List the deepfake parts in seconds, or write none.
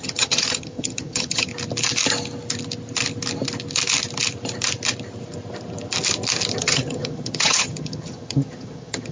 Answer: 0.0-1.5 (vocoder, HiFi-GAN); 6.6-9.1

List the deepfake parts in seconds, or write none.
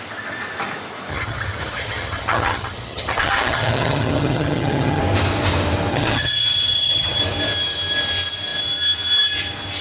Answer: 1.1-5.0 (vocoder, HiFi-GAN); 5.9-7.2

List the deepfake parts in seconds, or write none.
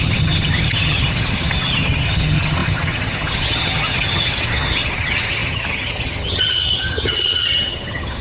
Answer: 0.0-8.2 (vocoder, HiFi-GAN)